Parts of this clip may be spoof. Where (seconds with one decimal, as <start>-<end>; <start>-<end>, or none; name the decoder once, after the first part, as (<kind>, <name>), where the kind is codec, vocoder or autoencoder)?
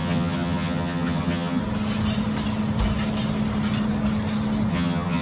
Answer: 0.0-1.6 (vocoder, HiFi-GAN); 4.7-5.2